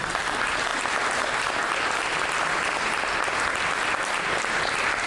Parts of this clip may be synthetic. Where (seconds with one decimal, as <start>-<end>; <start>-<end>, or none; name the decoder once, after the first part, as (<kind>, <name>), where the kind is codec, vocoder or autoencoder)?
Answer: none